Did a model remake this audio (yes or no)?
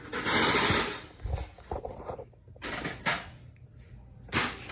no